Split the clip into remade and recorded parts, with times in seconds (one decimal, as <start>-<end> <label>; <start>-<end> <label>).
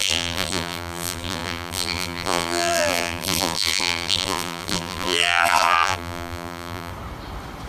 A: 0.0-6.9 remade; 6.9-7.7 recorded